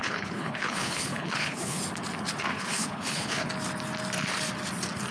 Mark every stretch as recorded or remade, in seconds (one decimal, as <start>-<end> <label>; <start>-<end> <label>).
0.0-1.8 remade; 1.8-2.5 recorded; 2.5-3.5 remade; 3.5-5.1 recorded